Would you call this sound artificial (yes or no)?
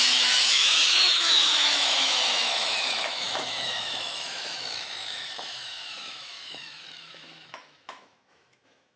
yes